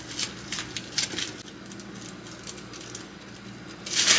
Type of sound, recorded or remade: recorded